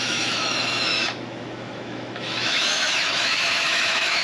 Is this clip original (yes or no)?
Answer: no